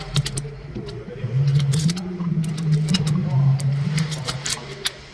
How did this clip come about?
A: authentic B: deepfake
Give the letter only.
B